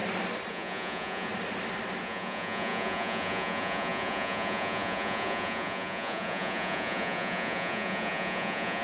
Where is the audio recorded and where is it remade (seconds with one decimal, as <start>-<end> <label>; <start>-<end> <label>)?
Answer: 0.0-0.5 recorded; 0.5-1.3 remade; 1.3-2.0 recorded; 2.0-8.8 remade